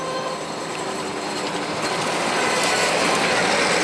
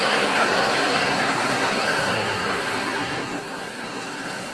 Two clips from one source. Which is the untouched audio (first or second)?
first